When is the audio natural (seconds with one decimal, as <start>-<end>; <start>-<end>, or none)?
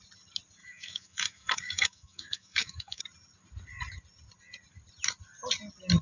0.0-0.6; 3.0-6.0